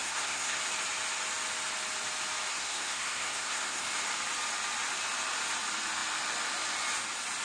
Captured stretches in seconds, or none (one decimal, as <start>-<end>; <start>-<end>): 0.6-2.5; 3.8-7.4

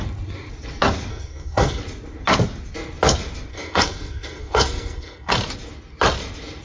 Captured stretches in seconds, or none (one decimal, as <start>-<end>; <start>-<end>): 0.0-1.1; 1.8-3.5; 5.3-6.6

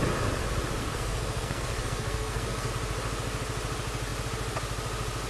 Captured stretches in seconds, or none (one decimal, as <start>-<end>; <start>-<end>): 0.0-0.8; 2.7-5.3